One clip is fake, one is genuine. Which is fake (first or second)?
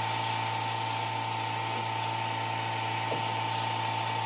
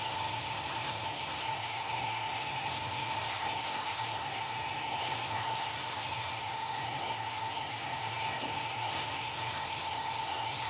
second